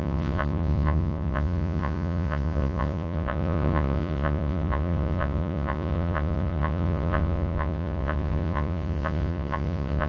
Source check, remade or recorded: remade